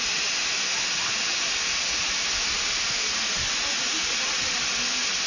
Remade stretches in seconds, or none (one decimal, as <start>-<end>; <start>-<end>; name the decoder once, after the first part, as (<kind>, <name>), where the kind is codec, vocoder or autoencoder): none